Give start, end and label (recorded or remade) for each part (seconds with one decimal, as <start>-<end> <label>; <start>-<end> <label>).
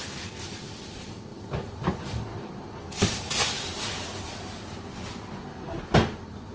0.0-6.5 recorded